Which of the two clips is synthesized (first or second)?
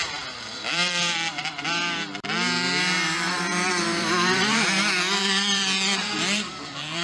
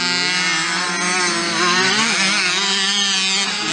first